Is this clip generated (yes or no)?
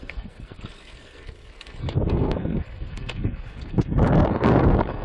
yes